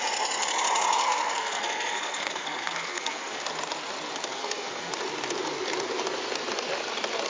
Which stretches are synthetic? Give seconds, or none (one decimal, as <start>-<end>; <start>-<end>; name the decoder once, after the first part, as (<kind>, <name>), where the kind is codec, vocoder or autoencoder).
1.0-3.4 (codec, SNAC); 4.3-4.9